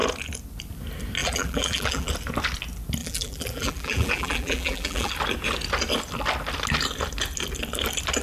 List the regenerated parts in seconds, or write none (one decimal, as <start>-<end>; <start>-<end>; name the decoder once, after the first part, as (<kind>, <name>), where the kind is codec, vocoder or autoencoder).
1.2-2.1 (vocoder, BigVGAN v2); 3.0-5.1